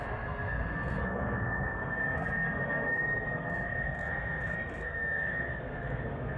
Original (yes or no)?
no